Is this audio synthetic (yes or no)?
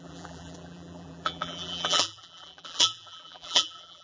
yes